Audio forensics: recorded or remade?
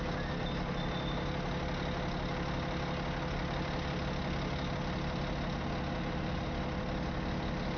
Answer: recorded